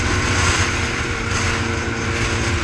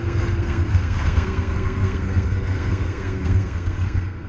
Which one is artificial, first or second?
second